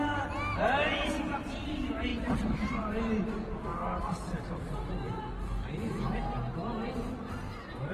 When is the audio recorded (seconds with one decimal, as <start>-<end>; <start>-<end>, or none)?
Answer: 0.0-7.9